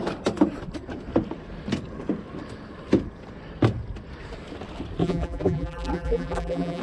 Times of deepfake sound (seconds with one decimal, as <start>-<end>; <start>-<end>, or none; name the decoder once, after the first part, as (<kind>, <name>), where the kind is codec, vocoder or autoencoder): 5.0-6.8 (vocoder, BigVGAN v2)